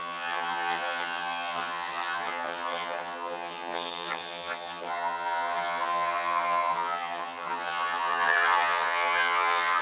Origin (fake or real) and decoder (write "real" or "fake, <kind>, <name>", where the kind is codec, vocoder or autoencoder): fake, vocoder, HiFi-GAN